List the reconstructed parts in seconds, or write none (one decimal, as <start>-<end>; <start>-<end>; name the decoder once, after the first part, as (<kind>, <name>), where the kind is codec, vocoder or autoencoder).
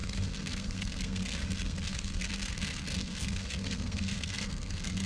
0.0-5.1 (codec, SNAC)